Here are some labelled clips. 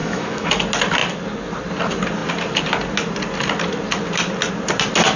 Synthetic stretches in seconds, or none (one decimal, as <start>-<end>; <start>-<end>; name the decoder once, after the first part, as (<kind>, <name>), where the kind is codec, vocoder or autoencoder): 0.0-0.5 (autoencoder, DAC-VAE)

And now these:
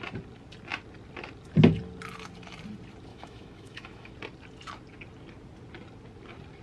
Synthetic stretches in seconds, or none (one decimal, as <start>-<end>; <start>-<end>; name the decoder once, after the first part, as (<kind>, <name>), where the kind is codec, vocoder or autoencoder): 3.1-4.1 (autoencoder, DAC-VAE)

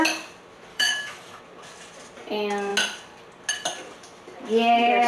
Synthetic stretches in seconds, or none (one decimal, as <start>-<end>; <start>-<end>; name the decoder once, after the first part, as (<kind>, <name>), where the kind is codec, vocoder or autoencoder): 0.7-1.4 (autoencoder, DAC-VAE)

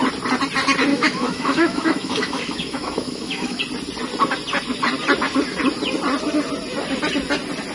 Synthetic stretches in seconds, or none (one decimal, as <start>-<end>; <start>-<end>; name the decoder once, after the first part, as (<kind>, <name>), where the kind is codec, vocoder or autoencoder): 0.9-3.6 (autoencoder, DAC-VAE)

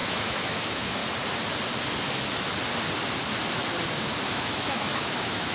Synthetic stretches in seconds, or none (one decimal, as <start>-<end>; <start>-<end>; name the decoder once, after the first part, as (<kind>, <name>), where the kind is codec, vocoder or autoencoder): 0.0-1.0 (autoencoder, DAC-VAE); 4.3-5.5

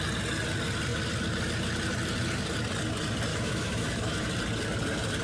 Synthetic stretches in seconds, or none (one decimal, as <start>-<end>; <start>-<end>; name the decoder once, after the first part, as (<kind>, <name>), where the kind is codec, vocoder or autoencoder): 3.3-4.3 (autoencoder, DAC-VAE)